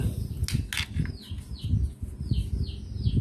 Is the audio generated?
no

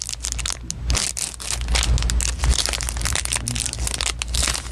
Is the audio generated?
no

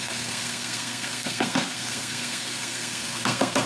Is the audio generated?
yes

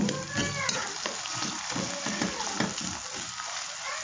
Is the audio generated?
no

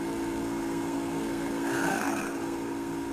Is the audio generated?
yes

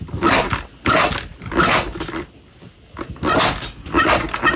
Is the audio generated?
no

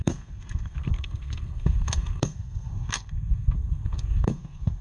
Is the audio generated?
yes